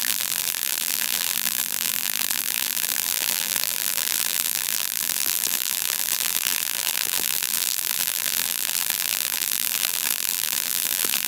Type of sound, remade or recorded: remade